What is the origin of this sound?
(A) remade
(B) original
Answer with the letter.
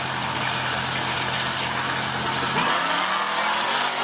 B